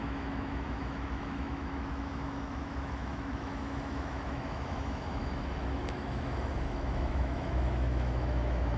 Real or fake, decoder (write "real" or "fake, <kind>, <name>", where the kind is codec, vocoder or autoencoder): fake, autoencoder, DAC-VAE